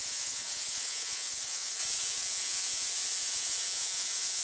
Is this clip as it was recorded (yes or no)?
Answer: no